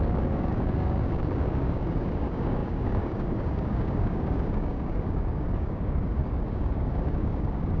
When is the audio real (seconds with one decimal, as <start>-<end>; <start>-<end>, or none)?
none